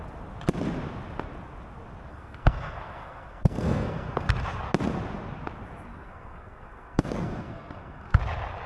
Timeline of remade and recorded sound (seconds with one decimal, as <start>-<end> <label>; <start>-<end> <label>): 0.0-2.1 recorded; 2.1-4.3 remade; 4.3-5.9 recorded; 5.9-8.2 remade; 8.2-8.7 recorded